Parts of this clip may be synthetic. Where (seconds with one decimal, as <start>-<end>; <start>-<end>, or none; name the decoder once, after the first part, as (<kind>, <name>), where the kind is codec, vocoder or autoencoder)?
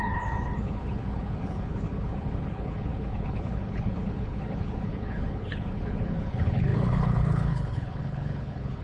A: 0.0-8.8 (codec, HILCodec)